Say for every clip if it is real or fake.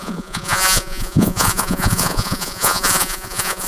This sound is fake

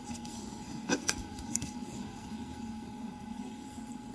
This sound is fake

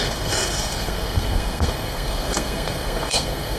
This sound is fake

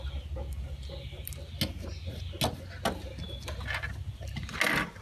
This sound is real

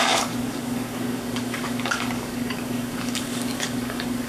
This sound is fake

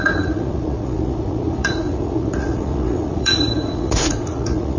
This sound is fake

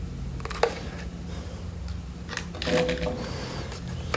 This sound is real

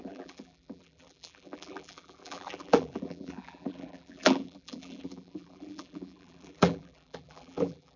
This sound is fake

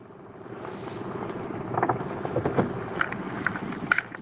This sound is real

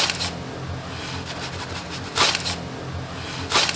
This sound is real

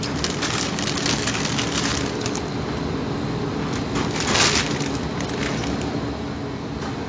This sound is real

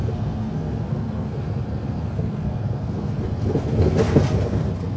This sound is fake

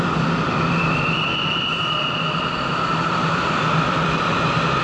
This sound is fake